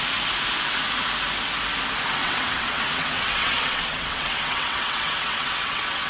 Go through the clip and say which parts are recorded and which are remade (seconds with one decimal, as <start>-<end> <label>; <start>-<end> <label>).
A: 0.0-2.2 recorded; 2.2-6.1 remade